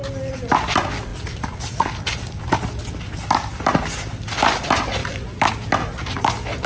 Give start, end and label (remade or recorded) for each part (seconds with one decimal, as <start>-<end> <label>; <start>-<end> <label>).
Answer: 0.0-1.1 recorded; 1.1-2.5 remade; 2.5-5.0 recorded; 5.0-5.5 remade; 5.5-6.7 recorded